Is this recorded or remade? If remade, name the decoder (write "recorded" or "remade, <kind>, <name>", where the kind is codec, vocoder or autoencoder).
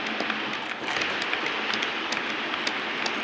recorded